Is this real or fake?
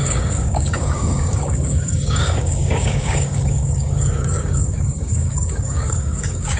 fake